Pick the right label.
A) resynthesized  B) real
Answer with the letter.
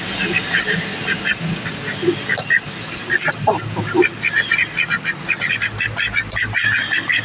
B